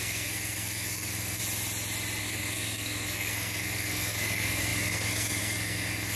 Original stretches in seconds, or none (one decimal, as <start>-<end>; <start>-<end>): 1.4-2.2